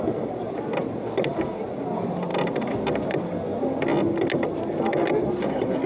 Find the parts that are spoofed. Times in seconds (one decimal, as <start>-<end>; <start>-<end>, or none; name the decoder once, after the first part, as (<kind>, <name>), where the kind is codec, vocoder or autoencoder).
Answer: none